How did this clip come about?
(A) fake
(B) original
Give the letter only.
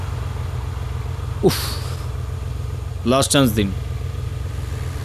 B